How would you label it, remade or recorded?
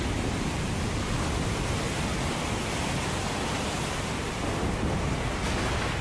recorded